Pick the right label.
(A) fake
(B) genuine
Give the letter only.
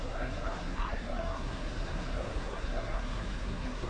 A